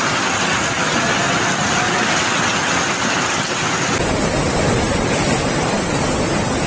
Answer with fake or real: real